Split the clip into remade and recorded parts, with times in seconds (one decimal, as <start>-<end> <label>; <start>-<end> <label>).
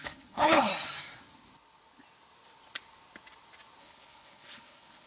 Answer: 0.0-0.7 remade; 0.7-3.8 recorded; 3.8-5.1 remade